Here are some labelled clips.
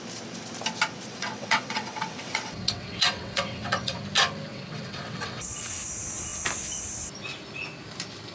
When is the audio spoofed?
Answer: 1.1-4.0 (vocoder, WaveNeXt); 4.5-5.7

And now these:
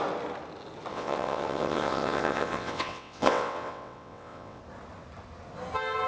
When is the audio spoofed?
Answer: 0.9-4.6 (vocoder, WaveNeXt)

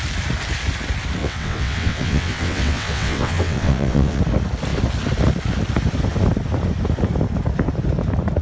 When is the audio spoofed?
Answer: 1.2-4.2 (vocoder, WaveNeXt)

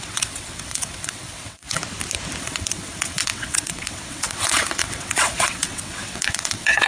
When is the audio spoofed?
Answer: 0.0-1.8 (vocoder, WaveNeXt); 2.4-6.9

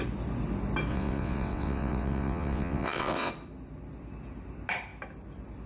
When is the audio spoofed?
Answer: 0.9-3.3 (vocoder, WaveNeXt)